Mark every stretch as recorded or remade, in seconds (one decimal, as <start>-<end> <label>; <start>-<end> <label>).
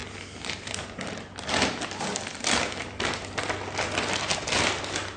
0.0-5.2 recorded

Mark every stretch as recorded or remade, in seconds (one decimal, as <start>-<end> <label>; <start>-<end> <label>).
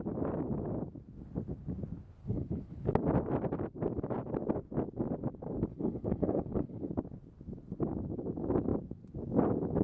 0.0-2.2 recorded; 2.2-2.9 remade; 2.9-5.7 recorded; 5.7-6.9 remade; 6.9-9.8 recorded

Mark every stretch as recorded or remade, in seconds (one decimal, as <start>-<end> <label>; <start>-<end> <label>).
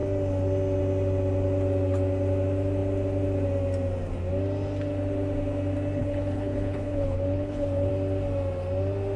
0.0-6.0 recorded; 6.0-7.9 remade; 7.9-9.2 recorded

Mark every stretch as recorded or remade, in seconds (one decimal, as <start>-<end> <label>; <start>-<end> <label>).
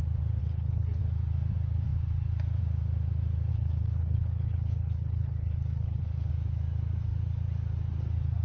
0.0-0.4 recorded; 0.4-1.0 remade; 1.0-3.5 recorded; 3.5-6.3 remade; 6.3-8.4 recorded